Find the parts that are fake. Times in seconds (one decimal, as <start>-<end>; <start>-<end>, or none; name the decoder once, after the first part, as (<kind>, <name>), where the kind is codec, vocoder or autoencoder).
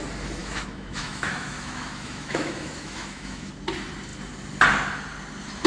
0.4-3.5 (autoencoder, DAC-VAE)